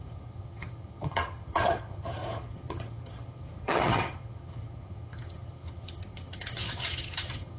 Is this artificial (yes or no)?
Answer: yes